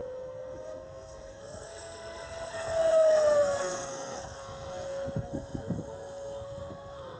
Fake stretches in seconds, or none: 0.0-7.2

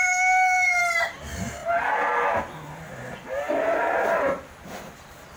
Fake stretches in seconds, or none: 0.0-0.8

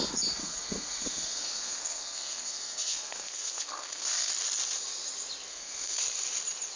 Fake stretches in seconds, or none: 0.4-4.3; 5.5-6.0

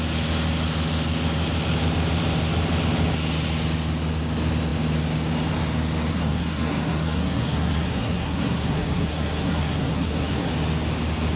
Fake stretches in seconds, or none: 6.1-10.5